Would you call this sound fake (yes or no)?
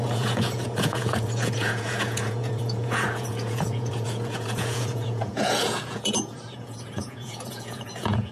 yes